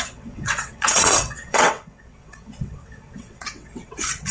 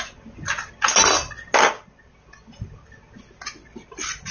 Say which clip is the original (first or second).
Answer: second